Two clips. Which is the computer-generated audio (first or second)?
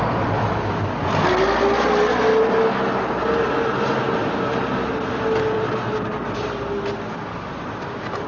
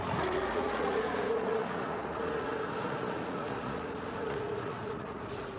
second